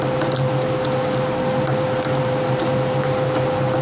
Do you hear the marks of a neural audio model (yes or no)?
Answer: no